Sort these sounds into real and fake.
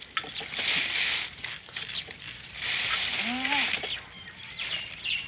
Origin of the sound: real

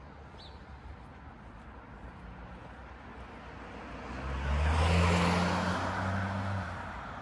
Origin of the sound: real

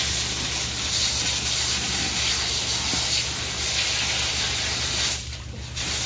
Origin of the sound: real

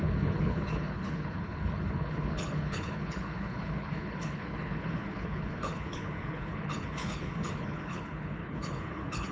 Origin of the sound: fake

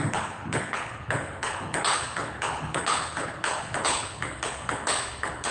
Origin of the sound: fake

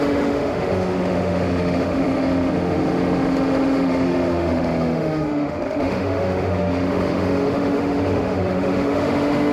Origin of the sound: fake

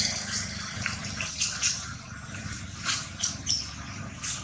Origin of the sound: real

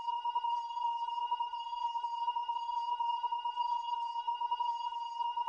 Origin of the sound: fake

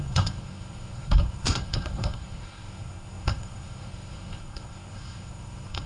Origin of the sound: fake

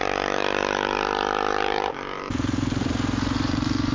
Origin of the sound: fake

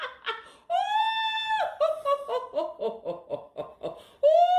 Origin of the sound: real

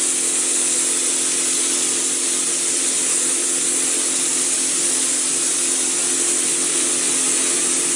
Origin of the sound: real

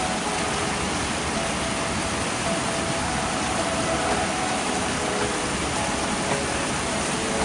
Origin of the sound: real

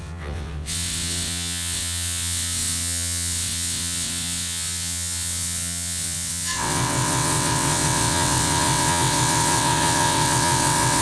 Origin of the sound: fake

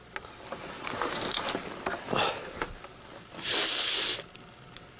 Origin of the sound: real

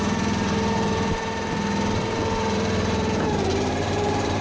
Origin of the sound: fake